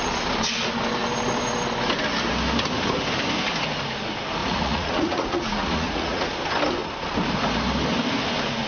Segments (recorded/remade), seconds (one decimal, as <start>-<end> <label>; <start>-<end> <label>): 0.0-4.4 recorded; 4.4-6.3 remade; 6.3-8.7 recorded